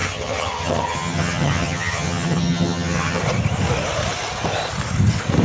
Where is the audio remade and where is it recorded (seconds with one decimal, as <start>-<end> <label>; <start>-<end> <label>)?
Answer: 0.0-3.2 remade; 3.2-5.4 recorded